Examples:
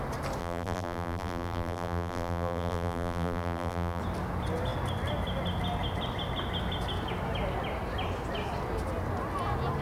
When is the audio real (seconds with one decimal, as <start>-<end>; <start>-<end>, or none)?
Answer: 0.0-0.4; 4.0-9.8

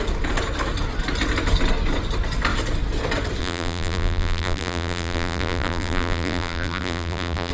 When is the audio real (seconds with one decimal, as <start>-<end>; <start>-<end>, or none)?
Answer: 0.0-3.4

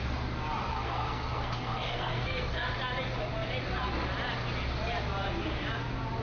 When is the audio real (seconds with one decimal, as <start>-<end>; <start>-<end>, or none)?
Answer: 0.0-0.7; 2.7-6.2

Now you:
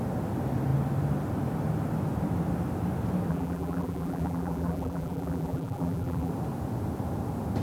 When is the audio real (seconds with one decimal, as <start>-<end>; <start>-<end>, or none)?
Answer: 0.0-3.3; 6.3-7.6

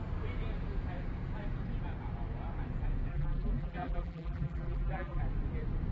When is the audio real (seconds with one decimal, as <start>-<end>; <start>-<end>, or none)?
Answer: 0.0-3.1; 5.2-5.9

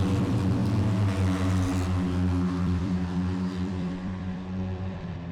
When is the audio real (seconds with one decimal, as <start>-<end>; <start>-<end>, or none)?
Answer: 0.6-2.6